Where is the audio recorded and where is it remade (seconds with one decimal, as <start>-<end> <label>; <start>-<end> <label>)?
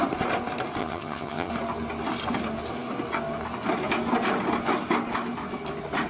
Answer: 0.0-0.8 recorded; 0.8-1.5 remade; 1.5-6.1 recorded